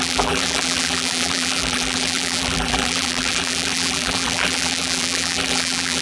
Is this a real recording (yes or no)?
no